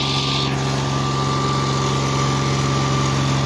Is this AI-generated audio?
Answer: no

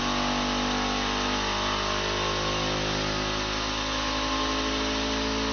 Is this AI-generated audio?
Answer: no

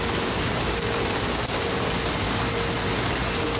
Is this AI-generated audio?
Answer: no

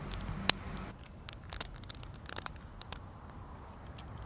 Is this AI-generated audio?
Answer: no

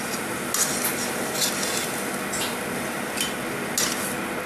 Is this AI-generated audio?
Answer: no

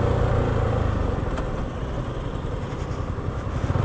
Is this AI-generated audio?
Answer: no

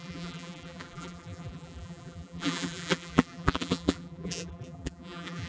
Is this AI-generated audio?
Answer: yes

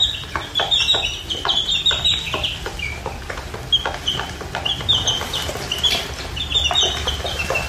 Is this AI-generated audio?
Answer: no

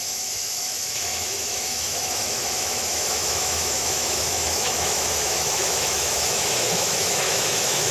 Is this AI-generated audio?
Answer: yes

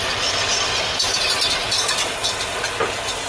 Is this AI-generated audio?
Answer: no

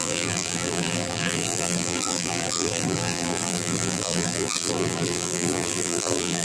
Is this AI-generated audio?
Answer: yes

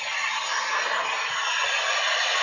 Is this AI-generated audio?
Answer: no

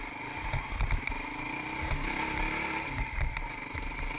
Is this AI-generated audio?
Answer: no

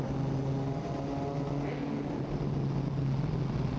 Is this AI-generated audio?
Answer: no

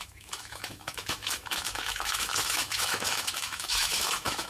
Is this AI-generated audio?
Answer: yes